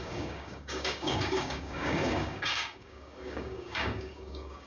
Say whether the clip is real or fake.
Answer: fake